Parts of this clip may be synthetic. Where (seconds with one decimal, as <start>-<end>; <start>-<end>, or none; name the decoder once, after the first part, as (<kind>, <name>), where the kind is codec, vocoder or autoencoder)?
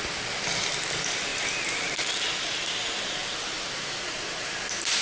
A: none